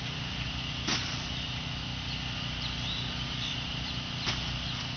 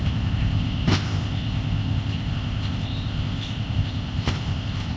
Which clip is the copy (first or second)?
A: second